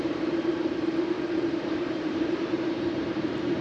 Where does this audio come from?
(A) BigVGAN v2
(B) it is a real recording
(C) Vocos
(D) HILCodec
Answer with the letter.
A